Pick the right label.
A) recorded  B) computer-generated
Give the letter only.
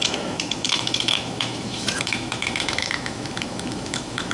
B